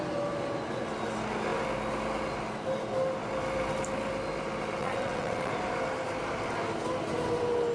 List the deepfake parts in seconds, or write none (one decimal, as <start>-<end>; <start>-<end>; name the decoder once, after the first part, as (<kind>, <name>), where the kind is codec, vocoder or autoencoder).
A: 4.8-5.5 (vocoder, WaveNeXt)